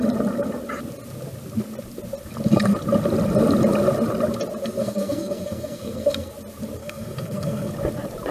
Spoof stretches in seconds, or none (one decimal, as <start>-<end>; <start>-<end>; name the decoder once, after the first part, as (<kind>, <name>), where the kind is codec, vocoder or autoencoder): 4.8-6.3 (codec, SNAC); 6.8-7.7